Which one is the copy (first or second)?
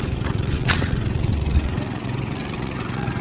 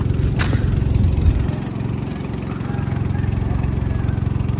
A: first